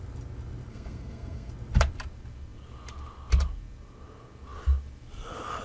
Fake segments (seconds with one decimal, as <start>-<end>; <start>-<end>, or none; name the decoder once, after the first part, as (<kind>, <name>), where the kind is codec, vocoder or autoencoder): 0.7-1.5 (codec, SNAC)